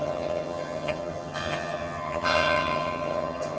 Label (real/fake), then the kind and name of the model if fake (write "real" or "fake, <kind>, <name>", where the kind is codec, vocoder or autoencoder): fake, vocoder, HiFi-GAN